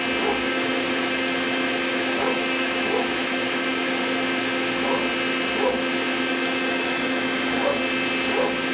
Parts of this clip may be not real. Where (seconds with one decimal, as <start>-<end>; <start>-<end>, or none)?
0.5-4.0; 6.3-7.2